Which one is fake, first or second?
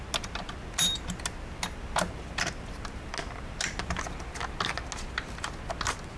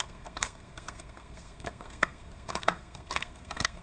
second